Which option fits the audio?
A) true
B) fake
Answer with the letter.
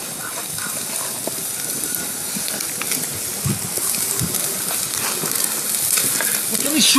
A